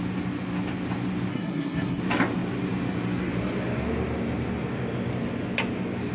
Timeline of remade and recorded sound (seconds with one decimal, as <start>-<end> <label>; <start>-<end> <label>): 0.0-1.3 recorded; 1.3-2.0 remade; 2.0-6.1 recorded